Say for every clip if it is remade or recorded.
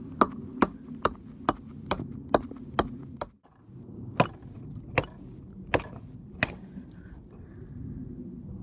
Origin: recorded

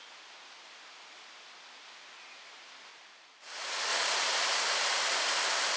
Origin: recorded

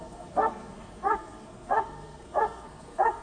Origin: remade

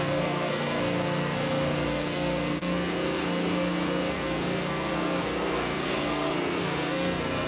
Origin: remade